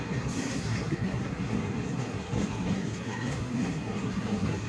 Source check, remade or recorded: remade